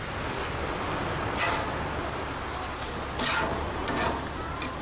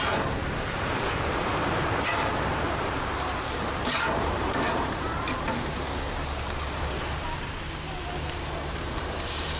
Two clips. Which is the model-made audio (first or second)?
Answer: second